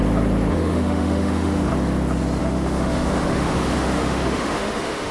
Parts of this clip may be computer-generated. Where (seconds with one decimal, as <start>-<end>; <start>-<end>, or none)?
0.5-1.7; 2.4-5.1

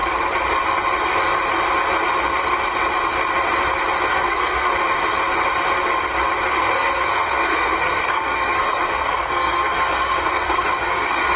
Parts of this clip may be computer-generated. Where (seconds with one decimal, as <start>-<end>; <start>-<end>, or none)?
4.1-4.7; 6.5-11.4

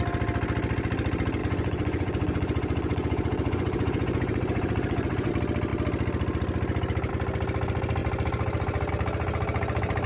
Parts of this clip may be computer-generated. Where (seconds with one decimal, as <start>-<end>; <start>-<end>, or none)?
1.4-5.3

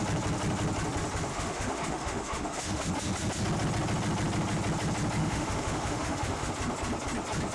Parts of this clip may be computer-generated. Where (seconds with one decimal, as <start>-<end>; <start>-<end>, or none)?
1.3-2.9; 5.2-6.5

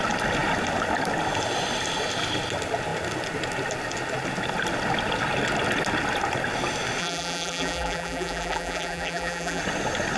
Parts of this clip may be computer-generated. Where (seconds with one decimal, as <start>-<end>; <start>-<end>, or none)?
7.0-9.6